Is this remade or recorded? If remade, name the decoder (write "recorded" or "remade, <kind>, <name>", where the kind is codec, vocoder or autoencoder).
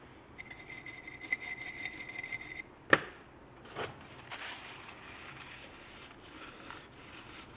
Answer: recorded